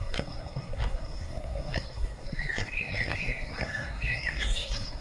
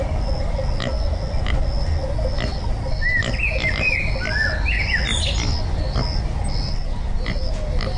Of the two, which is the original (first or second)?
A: second